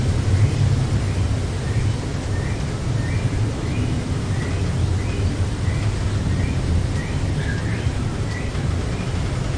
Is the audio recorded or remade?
recorded